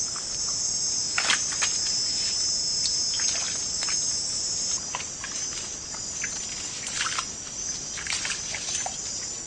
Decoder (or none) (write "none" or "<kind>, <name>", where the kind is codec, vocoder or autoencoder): none